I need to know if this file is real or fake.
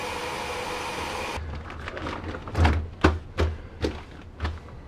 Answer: real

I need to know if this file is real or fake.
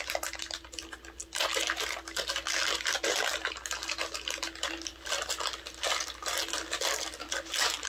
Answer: real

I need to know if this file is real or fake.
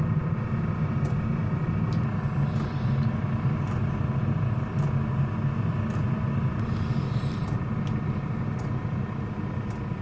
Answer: real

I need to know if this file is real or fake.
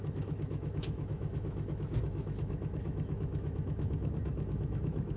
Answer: fake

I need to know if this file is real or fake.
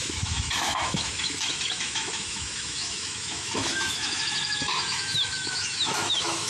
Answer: fake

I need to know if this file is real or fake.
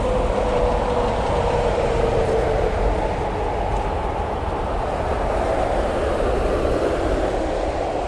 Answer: real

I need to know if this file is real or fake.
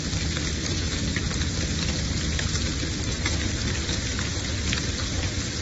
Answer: real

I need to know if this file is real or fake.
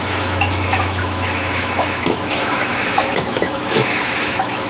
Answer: fake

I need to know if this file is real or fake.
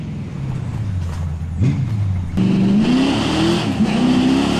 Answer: real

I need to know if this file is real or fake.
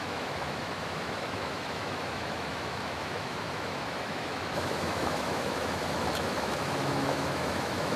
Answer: fake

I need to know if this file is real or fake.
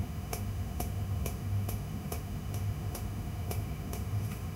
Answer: fake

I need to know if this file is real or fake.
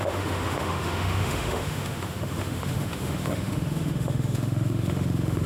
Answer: fake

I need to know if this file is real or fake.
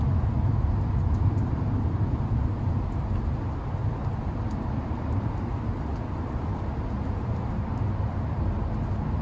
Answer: real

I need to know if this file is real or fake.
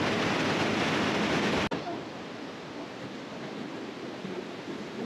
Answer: real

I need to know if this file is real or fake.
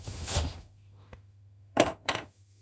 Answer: fake